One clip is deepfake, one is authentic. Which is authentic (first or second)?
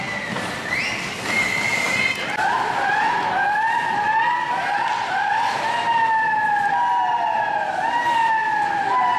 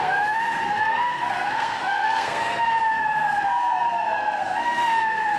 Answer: first